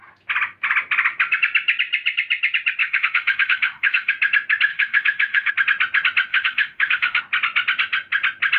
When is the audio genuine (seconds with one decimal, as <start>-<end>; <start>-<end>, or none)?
0.0-2.8; 4.1-4.7; 5.5-6.3; 7.2-8.6

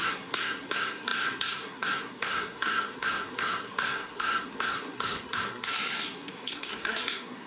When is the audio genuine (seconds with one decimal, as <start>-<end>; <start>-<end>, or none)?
none

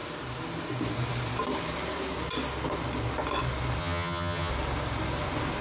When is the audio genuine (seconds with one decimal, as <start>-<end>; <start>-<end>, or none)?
0.0-3.8; 4.5-5.6

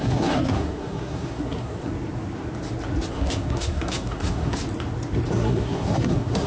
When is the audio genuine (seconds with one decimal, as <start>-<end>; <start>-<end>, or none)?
1.9-3.1; 4.6-5.3

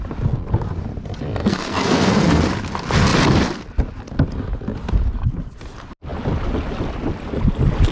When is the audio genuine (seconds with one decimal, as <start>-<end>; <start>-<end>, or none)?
0.0-1.4; 2.4-7.9